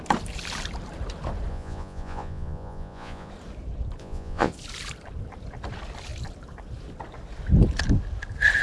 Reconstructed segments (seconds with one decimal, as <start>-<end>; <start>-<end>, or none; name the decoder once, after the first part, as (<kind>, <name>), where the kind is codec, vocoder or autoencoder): 1.5-3.3 (vocoder, Vocos); 4.0-4.5